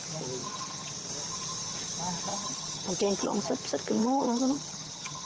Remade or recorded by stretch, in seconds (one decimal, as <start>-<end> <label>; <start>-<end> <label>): 0.0-0.4 recorded; 0.4-0.9 remade; 0.9-2.3 recorded; 2.3-3.4 remade; 3.4-4.0 recorded; 4.0-5.3 remade